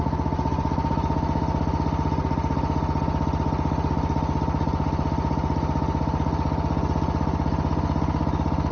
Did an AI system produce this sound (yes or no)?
no